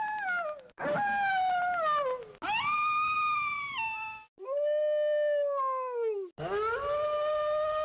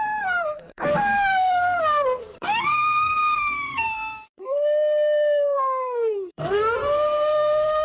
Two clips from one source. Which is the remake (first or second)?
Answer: second